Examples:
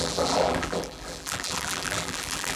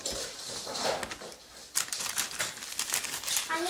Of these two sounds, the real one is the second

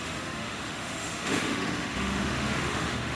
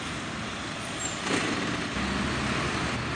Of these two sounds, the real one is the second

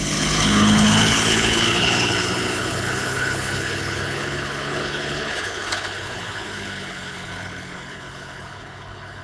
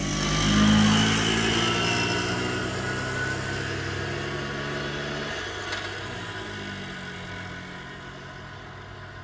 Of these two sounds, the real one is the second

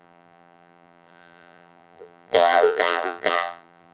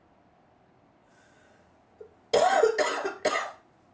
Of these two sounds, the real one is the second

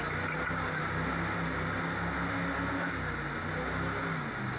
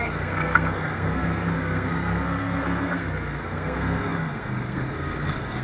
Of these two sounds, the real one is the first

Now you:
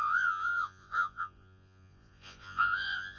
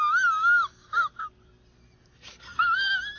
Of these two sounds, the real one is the second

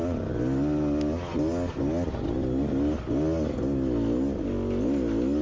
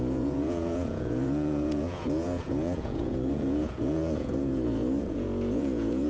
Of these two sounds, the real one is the first